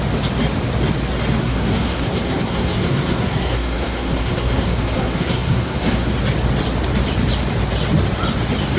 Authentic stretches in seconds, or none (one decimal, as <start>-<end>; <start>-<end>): 0.0-1.4; 6.1-8.8